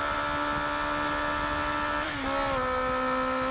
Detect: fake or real real